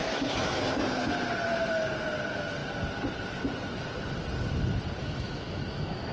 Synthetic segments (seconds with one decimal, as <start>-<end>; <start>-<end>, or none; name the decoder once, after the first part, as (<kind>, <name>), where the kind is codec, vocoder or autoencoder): 0.0-0.6 (autoencoder, DAC-VAE); 5.0-6.1